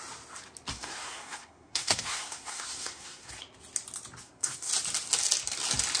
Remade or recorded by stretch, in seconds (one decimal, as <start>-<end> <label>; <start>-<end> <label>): 0.0-0.7 recorded; 0.7-3.3 remade; 3.3-4.2 recorded; 4.2-4.7 remade; 4.7-6.0 recorded